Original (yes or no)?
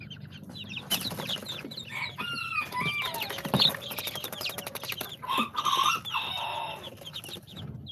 yes